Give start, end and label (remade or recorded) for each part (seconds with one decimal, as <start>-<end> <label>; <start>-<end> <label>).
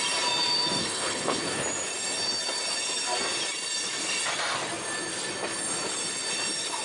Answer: 0.0-0.8 recorded; 0.8-1.4 remade; 1.4-6.8 recorded